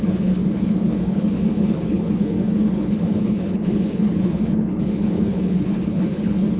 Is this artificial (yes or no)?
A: yes